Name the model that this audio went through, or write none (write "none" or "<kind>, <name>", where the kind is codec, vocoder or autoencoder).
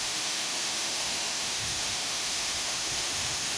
autoencoder, DAC-VAE